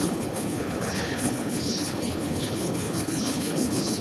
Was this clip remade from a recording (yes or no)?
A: yes